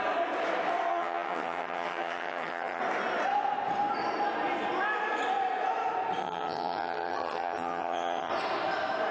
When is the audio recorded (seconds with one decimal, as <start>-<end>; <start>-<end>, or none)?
0.0-0.9; 2.8-6.2; 8.3-9.1